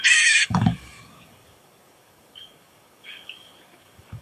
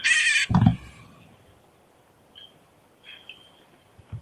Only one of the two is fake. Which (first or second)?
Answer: first